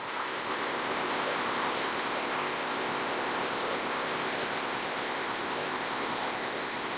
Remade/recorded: remade